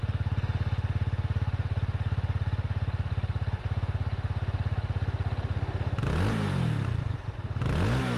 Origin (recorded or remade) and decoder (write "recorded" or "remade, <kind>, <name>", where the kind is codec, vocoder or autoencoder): recorded